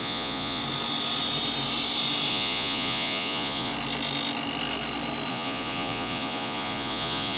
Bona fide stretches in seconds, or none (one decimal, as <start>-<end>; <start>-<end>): 0.6-2.3; 3.7-5.3